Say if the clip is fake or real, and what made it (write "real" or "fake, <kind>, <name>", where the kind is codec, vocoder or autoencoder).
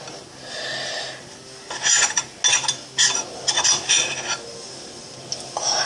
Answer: real